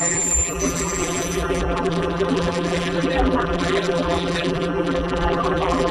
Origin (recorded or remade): remade